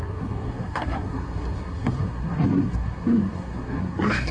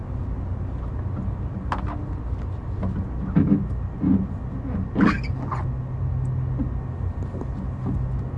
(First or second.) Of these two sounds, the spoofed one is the first